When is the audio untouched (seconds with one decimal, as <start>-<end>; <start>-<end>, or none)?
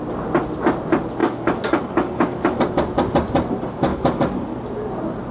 0.0-1.2; 2.6-3.9; 4.6-5.3